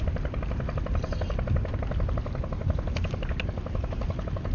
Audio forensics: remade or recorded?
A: recorded